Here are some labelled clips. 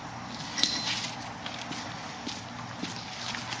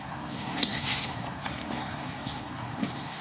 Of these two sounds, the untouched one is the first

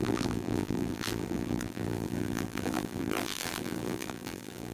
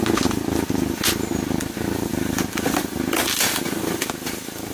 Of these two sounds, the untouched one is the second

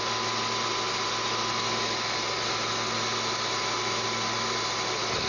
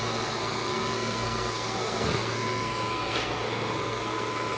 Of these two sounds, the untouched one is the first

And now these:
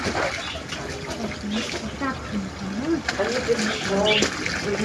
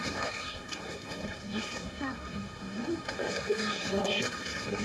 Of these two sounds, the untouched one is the first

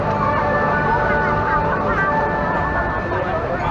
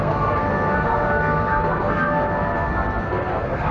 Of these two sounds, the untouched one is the first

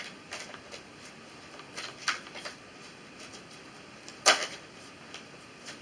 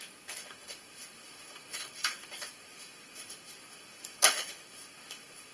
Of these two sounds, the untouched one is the first